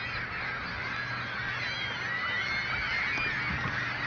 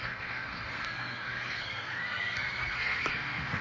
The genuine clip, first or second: first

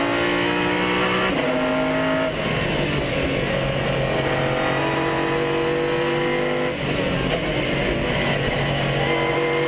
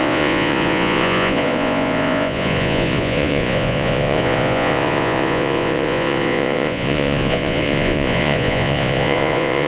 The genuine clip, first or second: first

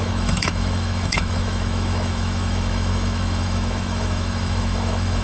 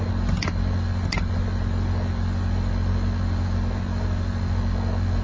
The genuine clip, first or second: second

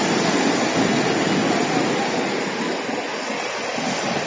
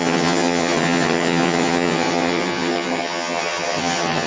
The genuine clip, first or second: first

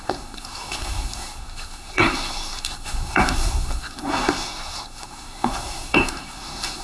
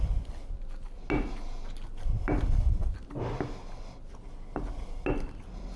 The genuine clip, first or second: second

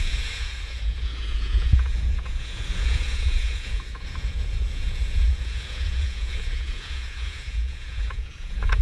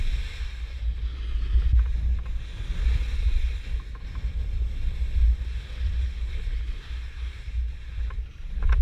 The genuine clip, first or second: second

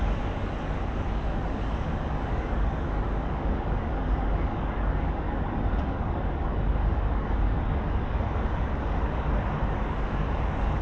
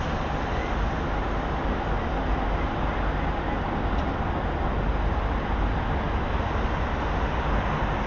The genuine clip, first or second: second